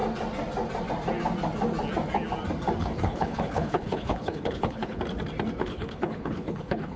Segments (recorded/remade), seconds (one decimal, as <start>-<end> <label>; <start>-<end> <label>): 0.0-2.8 recorded; 2.8-5.0 remade; 5.0-5.6 recorded; 5.6-7.0 remade